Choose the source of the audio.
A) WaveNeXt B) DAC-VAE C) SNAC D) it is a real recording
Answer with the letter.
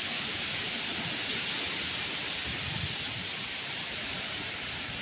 D